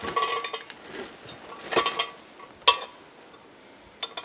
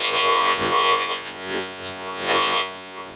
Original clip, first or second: first